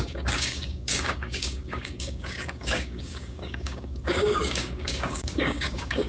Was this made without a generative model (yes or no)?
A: no